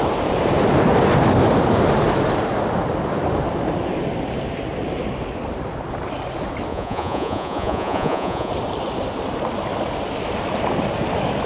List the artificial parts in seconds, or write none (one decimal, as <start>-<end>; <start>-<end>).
6.7-8.5